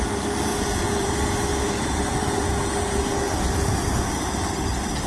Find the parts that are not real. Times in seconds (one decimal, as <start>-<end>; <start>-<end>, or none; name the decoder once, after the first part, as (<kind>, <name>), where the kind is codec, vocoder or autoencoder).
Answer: 0.5-1.1 (vocoder, Vocos); 1.5-3.2